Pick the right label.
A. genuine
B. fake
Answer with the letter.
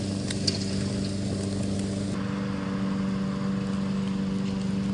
A